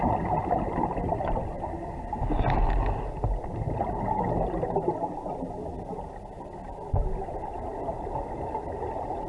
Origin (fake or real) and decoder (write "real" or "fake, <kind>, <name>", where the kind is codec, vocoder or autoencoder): real